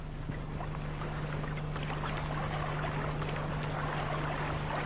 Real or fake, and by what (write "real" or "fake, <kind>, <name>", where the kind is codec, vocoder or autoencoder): real